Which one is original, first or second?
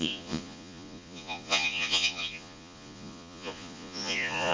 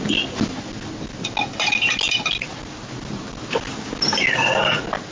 second